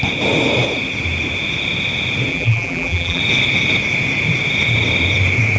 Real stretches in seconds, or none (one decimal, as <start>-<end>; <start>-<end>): 0.0-2.3; 3.2-5.6